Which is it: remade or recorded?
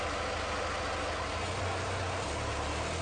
recorded